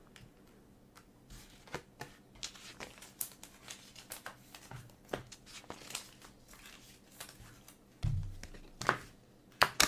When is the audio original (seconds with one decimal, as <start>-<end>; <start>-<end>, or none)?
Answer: 0.0-9.9